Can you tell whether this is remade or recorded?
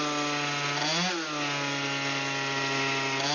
recorded